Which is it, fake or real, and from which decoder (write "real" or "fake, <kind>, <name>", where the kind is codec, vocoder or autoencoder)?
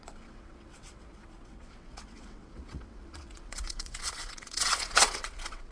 fake, vocoder, WaveNeXt